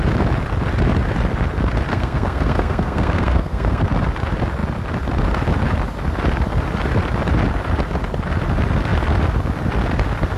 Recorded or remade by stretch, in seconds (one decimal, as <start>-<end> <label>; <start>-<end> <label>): 0.0-1.9 recorded; 1.9-3.8 remade; 3.8-10.4 recorded